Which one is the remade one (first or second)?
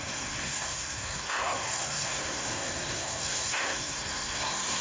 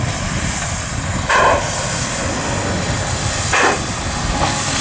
first